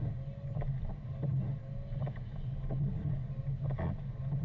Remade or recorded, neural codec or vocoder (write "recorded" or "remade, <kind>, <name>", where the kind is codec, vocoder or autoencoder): recorded